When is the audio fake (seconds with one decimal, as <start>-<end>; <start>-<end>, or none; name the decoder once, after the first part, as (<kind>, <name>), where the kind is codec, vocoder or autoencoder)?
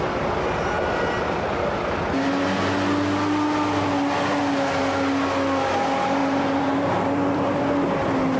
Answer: 6.2-7.6 (vocoder, BigVGAN v2)